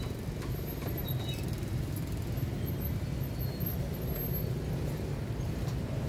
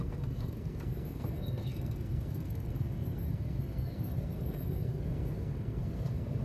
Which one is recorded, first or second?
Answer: first